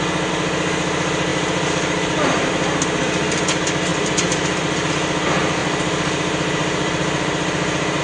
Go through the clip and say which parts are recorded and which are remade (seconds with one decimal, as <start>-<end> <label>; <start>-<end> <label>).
0.0-1.3 recorded; 1.3-2.5 remade; 2.5-3.9 recorded; 3.9-4.9 remade; 4.9-5.6 recorded; 5.6-8.0 remade